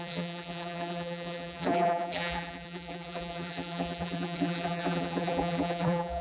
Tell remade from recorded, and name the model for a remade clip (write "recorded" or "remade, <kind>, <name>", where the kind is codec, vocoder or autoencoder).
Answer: remade, vocoder, BigVGAN v2